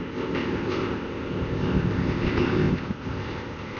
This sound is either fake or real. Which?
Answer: fake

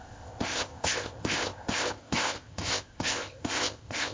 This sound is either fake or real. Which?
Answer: fake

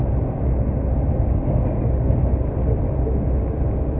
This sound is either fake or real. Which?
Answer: real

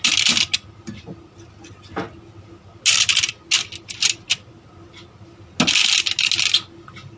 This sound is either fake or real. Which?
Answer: real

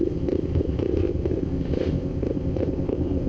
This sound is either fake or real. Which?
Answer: fake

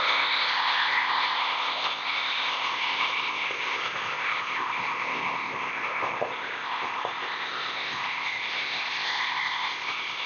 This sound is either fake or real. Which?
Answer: fake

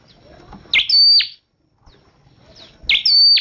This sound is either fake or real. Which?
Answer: real